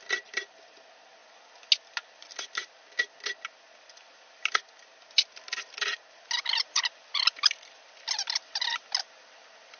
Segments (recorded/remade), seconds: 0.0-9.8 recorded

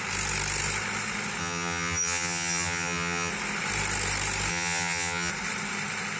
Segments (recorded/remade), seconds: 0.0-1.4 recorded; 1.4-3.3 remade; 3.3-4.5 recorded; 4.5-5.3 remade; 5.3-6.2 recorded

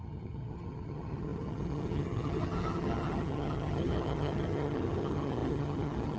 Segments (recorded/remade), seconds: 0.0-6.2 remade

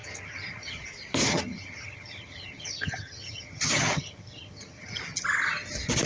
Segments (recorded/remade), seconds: 0.0-0.8 remade; 0.8-1.3 recorded; 1.3-5.0 remade; 5.0-6.1 recorded

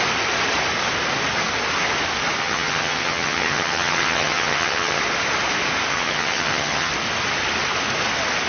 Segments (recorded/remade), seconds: 0.0-2.4 recorded; 2.4-5.0 remade; 5.0-5.9 recorded; 5.9-6.9 remade; 6.9-8.5 recorded

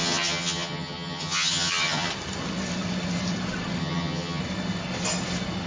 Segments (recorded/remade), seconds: 0.0-2.1 remade; 2.1-3.8 recorded; 3.8-4.4 remade; 4.4-5.7 recorded